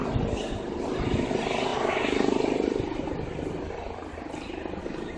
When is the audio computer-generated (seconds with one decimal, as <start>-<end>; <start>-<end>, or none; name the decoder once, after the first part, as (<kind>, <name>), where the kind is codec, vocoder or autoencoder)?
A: none